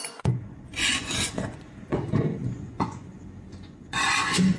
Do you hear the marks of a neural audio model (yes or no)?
yes